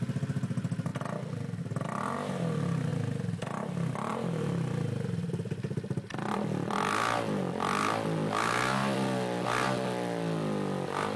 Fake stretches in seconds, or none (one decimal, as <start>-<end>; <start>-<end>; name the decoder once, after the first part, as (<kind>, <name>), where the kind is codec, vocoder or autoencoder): none